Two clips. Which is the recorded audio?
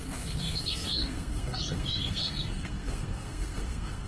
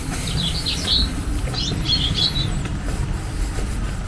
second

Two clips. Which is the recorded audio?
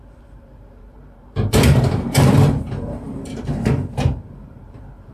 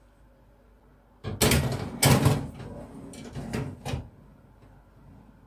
second